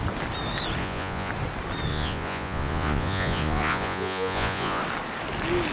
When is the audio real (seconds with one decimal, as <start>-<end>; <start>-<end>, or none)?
0.0-0.8; 1.3-1.9; 4.8-5.7